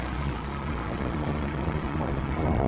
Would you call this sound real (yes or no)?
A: no